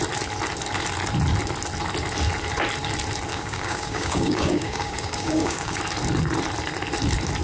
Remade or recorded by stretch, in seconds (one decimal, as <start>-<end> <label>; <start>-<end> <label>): 0.0-3.3 recorded; 3.3-5.8 remade; 5.8-7.4 recorded